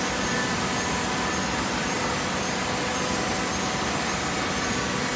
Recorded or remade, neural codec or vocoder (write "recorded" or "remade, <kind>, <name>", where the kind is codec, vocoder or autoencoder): recorded